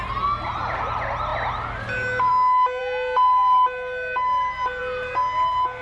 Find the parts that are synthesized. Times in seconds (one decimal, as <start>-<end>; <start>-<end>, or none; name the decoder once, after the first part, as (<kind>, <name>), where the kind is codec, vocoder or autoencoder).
none